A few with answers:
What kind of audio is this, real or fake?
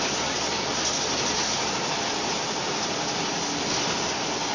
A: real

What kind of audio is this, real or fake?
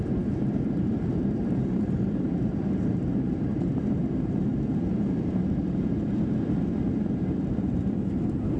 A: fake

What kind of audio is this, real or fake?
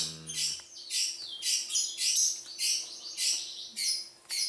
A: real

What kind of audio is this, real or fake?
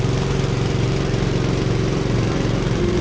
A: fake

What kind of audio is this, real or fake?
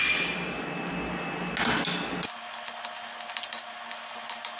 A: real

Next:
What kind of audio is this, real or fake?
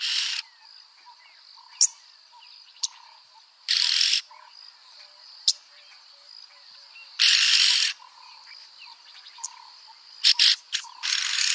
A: fake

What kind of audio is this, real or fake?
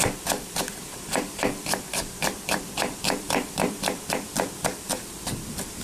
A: fake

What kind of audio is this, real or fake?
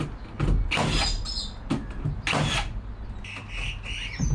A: real